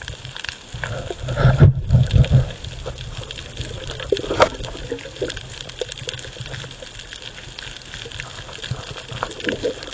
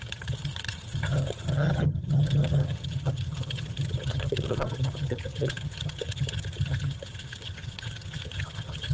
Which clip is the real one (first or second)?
first